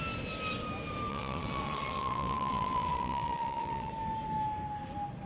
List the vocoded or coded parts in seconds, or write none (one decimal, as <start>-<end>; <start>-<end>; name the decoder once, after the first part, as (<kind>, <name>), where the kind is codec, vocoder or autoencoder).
1.1-3.9 (vocoder, WaveNeXt)